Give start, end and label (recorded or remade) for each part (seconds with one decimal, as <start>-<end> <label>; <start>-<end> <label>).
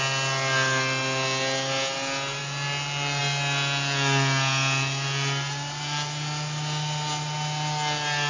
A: 0.0-8.3 recorded